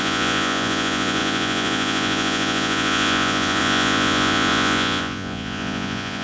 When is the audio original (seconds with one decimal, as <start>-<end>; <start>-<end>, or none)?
none